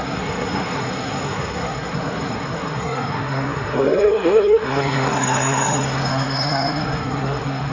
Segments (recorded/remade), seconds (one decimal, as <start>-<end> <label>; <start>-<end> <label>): 0.0-7.7 remade